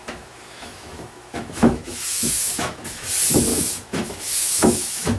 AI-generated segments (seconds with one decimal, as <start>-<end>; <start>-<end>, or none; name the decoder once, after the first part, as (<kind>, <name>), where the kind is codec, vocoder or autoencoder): 0.0-3.1 (autoencoder, DAC-VAE); 3.5-5.2